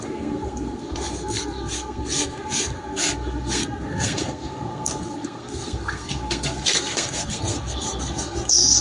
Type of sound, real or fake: fake